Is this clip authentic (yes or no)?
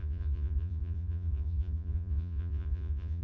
no